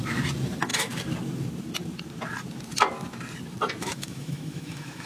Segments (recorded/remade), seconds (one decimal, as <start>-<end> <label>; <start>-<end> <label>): 0.0-3.8 recorded; 3.8-5.1 remade